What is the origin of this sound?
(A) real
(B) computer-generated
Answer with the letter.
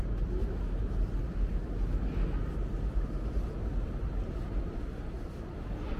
A